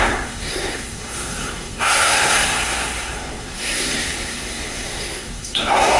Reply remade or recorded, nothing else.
remade